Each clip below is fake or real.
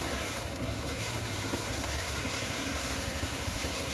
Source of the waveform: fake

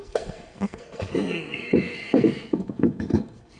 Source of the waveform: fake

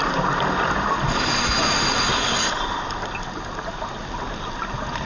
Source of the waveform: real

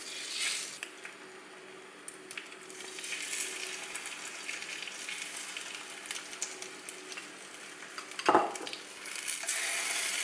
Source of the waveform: real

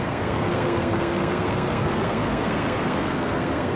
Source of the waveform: fake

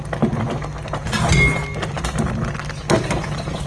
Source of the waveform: real